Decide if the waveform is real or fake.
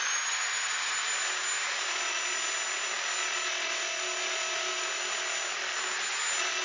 real